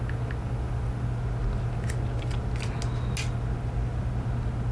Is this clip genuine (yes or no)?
yes